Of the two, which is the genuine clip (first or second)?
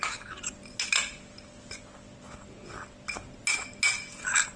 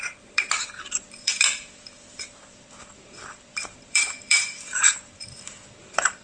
first